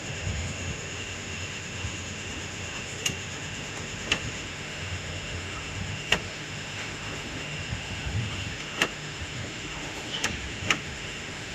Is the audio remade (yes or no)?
yes